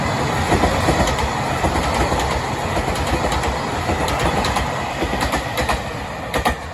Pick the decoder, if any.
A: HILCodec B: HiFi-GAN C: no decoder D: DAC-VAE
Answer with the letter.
C